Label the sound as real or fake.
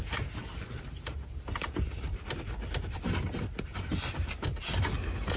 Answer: real